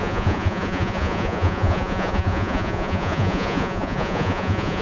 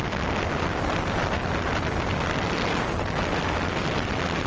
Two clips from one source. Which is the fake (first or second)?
first